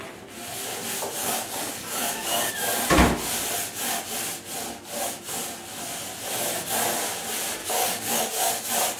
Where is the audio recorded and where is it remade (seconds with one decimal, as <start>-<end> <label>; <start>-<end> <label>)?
0.0-1.2 recorded; 1.2-2.5 remade; 2.5-7.6 recorded; 7.6-8.5 remade; 8.5-9.0 recorded